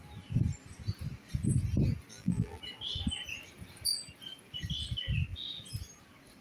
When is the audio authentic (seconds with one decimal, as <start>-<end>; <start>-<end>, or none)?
0.0-2.1; 2.6-6.4